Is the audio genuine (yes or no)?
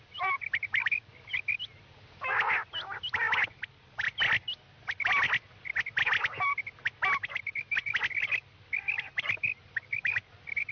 yes